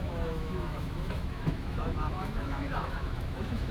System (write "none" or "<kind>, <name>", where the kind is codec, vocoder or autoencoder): autoencoder, DAC-VAE